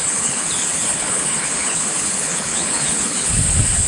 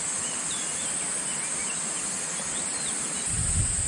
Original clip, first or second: second